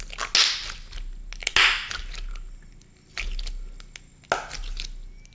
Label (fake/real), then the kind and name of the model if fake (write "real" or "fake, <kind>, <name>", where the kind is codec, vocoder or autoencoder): real